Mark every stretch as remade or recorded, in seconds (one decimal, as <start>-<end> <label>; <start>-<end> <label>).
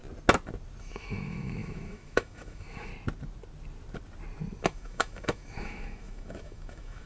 0.0-0.8 recorded; 0.8-2.9 remade; 2.9-4.6 recorded; 4.6-7.1 remade